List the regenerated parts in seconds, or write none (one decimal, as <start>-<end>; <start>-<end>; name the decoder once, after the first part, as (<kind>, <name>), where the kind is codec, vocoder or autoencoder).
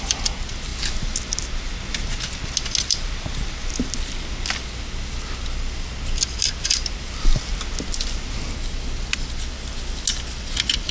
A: none